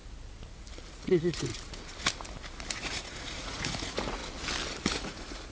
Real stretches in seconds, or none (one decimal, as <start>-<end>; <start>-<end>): 0.0-0.9; 1.5-2.7; 4.2-4.9